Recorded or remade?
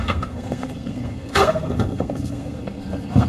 remade